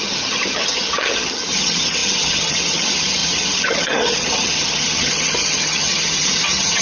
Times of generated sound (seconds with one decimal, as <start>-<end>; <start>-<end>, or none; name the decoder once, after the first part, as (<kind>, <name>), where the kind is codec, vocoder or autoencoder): 0.0-6.8 (vocoder, HiFi-GAN)